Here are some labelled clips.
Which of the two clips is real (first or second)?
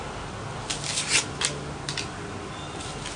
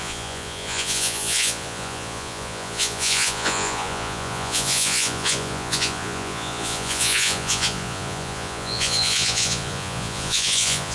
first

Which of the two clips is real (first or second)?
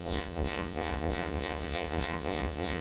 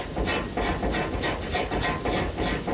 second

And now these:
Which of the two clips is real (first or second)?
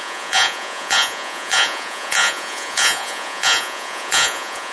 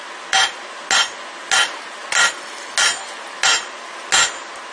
second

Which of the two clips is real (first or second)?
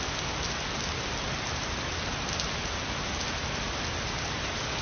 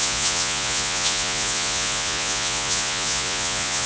first